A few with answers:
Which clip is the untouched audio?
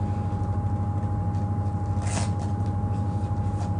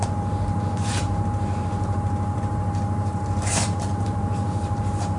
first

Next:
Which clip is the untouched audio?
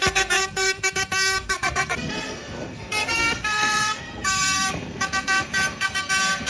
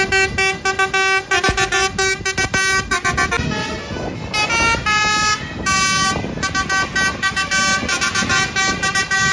second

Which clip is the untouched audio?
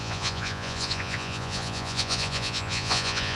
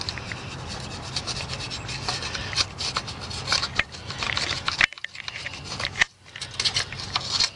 second